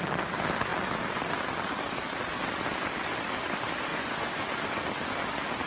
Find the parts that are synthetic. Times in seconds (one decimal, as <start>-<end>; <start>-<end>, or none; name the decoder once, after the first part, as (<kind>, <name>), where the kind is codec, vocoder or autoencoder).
3.9-4.4 (vocoder, Vocos)